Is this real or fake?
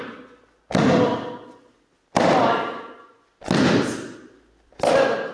real